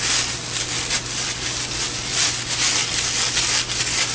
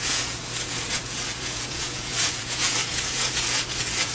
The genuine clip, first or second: first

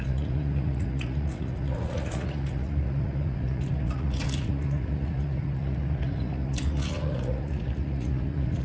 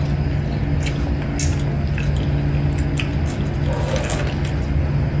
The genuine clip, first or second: second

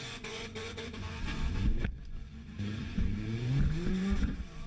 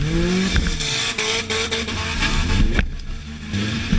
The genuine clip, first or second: second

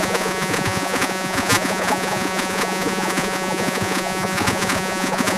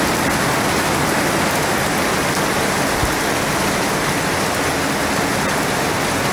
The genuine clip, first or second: second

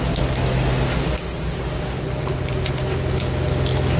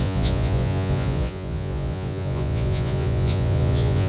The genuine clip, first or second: first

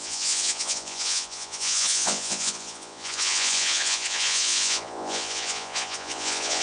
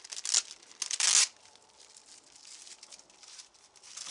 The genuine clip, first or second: second